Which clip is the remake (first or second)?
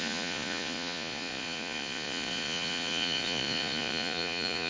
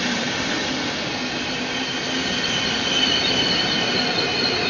first